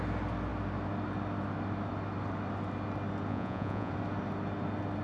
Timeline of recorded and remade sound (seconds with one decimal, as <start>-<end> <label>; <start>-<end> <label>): 0.0-3.3 recorded; 3.3-3.9 remade; 3.9-5.0 recorded